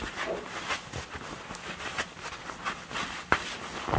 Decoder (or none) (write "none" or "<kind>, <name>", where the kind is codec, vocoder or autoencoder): none